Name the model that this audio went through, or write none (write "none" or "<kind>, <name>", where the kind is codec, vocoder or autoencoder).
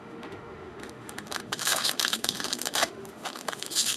autoencoder, DAC-VAE